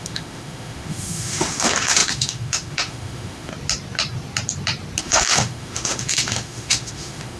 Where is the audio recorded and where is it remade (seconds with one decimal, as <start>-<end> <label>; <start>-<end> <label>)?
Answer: 0.0-3.5 remade; 3.5-5.0 recorded; 5.0-7.4 remade